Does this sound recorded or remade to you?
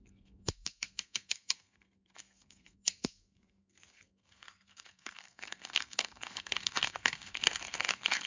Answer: remade